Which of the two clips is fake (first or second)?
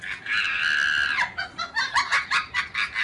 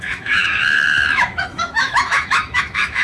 second